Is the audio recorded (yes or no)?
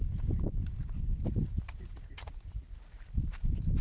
yes